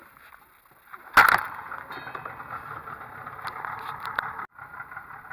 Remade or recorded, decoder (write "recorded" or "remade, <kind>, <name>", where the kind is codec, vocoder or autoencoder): recorded